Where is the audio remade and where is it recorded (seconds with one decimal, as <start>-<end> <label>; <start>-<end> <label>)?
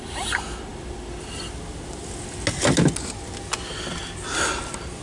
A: 0.0-5.0 recorded